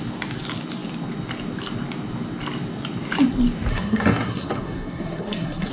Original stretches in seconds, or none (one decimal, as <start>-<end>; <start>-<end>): 0.0-3.7